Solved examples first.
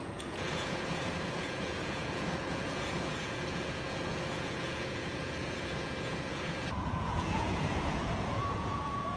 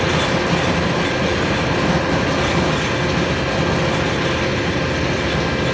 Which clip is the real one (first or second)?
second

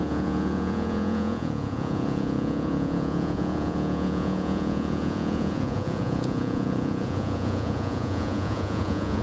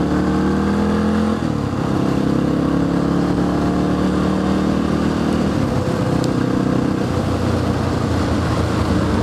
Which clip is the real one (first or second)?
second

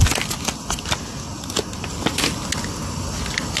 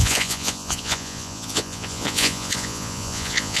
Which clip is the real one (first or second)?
first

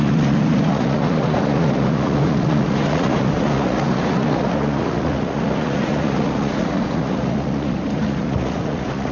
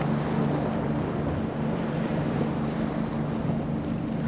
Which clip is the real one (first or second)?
second